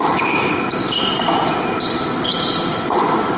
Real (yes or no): no